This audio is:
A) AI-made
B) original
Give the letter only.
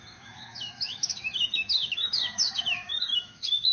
A